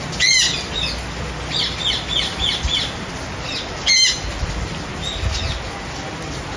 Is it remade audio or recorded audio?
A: recorded